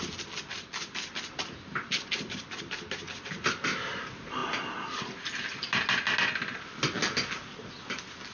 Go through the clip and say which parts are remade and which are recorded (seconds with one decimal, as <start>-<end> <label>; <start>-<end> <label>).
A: 0.0-8.3 recorded